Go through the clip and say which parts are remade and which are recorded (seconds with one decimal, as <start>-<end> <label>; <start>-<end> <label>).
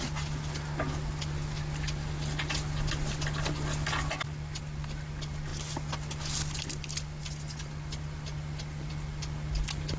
0.0-10.0 recorded